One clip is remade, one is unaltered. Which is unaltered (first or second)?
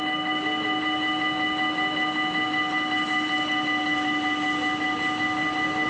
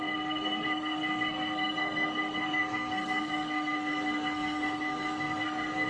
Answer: first